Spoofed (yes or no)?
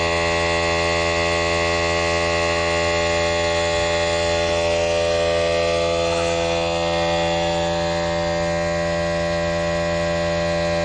no